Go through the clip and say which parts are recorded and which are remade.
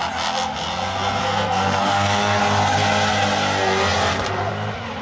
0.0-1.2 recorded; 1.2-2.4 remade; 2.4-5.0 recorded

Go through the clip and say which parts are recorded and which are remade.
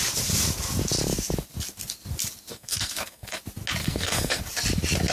0.0-2.5 recorded; 2.5-3.4 remade; 3.4-3.8 recorded; 3.8-4.4 remade; 4.4-5.1 recorded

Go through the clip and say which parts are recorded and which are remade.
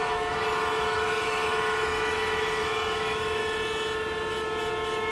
0.0-3.4 remade; 3.4-5.1 recorded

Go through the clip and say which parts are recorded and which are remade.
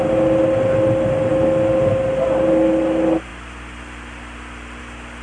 0.0-3.3 recorded; 3.3-4.8 remade; 4.8-5.2 recorded